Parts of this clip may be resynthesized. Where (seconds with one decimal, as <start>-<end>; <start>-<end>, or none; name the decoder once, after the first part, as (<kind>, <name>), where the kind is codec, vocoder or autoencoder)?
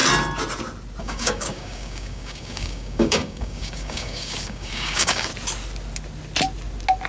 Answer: 1.0-5.3 (codec, DAC)